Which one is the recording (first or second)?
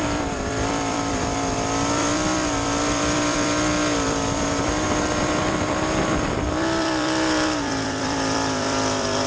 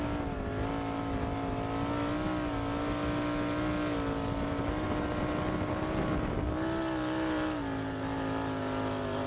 second